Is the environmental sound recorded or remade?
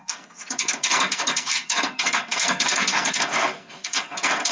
remade